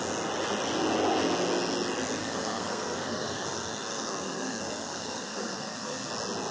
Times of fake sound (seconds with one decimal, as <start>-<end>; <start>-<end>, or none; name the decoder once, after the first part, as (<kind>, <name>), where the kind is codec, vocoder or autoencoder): 2.2-6.1 (codec, SNAC)